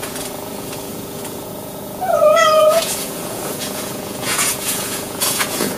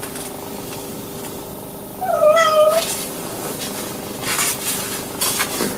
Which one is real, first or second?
second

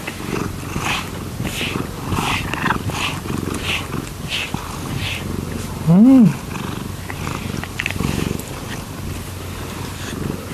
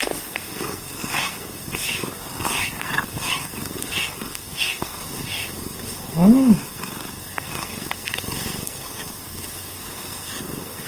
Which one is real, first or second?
first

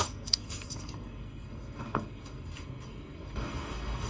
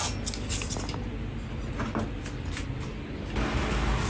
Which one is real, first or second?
second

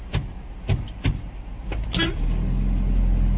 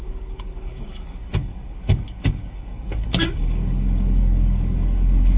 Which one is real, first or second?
first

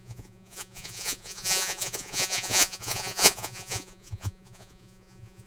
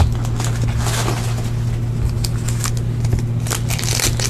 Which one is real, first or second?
second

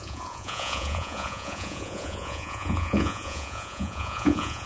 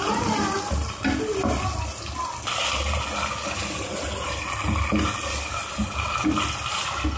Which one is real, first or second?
second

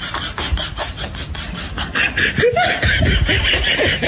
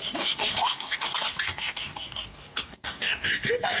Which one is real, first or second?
first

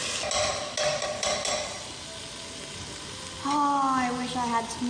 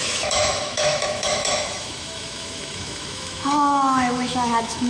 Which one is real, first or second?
first